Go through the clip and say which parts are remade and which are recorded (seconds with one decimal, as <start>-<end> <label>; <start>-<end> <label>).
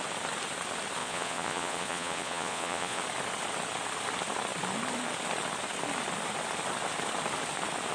0.0-1.0 recorded; 1.0-3.0 remade; 3.0-7.9 recorded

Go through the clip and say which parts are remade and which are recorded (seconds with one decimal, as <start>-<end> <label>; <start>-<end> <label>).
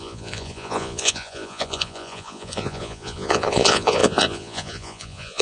0.0-5.4 remade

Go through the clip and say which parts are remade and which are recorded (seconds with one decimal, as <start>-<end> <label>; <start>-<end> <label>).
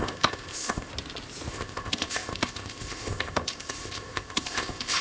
0.0-0.9 remade; 0.9-1.5 recorded; 1.5-5.0 remade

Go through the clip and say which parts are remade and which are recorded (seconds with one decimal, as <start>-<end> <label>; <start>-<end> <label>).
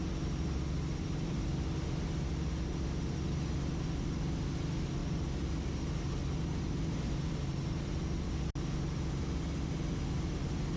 0.0-10.8 recorded